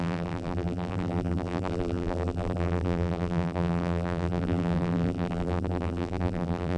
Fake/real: fake